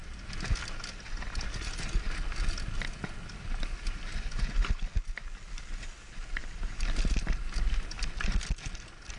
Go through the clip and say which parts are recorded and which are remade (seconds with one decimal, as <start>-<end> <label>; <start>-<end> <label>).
0.0-9.2 recorded